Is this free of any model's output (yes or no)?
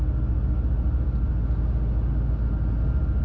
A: yes